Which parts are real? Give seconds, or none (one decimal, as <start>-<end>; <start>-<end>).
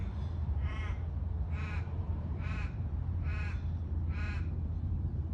0.0-2.0; 3.3-4.5